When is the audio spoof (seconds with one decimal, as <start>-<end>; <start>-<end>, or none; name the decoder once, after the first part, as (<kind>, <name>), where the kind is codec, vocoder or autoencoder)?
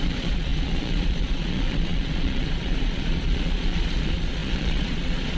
0.0-5.4 (vocoder, Vocos)